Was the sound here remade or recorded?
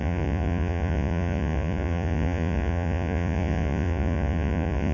remade